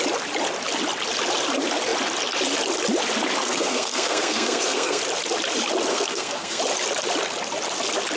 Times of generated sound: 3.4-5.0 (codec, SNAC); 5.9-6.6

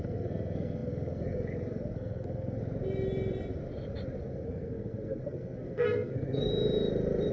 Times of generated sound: 0.0-2.6 (codec, SNAC); 4.2-6.5

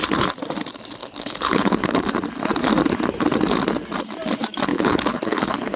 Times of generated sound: 1.0-2.0 (codec, HILCodec); 4.7-5.8